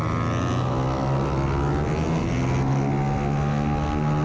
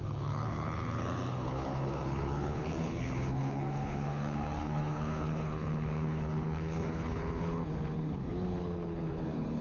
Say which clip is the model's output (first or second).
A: second